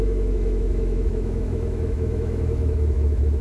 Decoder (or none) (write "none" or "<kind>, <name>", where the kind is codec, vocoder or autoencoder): autoencoder, DAC-VAE